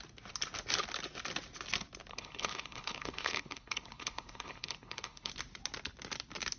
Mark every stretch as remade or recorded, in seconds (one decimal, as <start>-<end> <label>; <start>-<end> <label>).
0.0-2.1 recorded; 2.1-5.3 remade; 5.3-6.6 recorded